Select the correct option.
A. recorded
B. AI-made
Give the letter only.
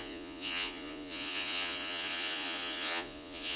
B